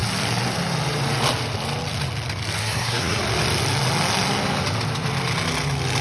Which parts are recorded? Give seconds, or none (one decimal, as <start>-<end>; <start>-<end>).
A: 0.0-2.6; 3.2-6.0